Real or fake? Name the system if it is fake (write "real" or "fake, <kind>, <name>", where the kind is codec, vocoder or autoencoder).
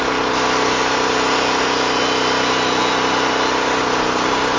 real